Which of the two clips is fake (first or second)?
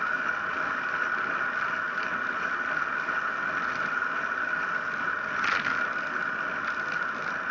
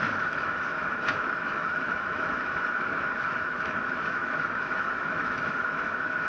second